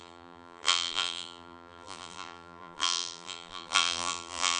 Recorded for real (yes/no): no